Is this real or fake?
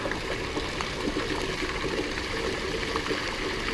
real